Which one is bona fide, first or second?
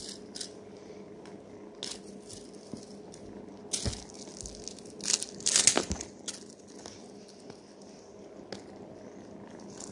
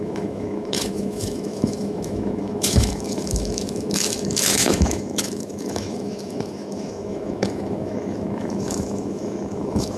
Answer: first